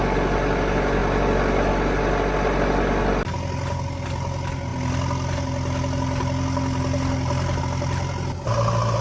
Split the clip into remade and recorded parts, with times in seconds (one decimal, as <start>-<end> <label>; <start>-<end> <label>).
0.0-9.0 recorded